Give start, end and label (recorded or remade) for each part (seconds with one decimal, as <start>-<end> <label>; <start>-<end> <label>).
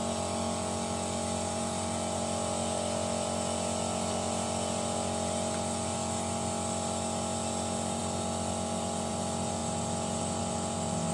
0.0-11.1 recorded